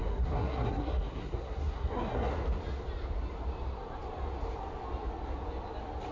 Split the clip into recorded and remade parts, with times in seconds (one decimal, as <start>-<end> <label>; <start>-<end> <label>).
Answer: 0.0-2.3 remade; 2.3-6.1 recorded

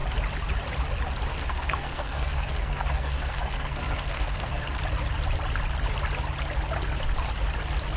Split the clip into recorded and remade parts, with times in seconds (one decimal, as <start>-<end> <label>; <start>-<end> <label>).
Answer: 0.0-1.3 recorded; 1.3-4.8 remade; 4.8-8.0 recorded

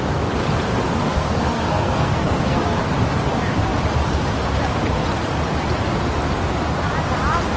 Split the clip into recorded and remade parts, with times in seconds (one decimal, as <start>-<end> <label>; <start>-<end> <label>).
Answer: 0.0-1.0 recorded; 1.0-2.9 remade; 2.9-7.6 recorded

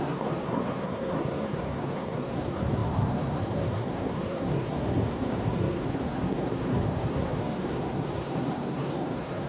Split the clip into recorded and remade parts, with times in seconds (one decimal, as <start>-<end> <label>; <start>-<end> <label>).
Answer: 0.0-9.5 remade

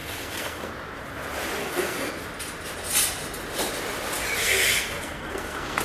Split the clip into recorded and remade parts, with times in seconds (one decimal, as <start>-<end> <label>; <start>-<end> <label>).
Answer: 0.0-0.7 remade; 0.7-1.6 recorded; 1.6-2.1 remade; 2.1-4.4 recorded; 4.4-5.8 remade

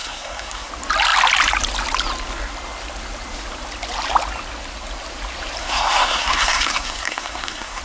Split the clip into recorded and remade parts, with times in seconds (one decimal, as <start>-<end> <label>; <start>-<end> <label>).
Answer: 0.0-0.7 remade; 0.7-5.6 recorded; 5.6-7.8 remade